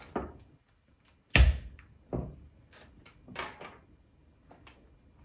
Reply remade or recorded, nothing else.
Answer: recorded